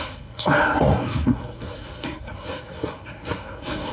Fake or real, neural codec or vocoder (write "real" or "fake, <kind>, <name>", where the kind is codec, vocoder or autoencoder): fake, codec, SNAC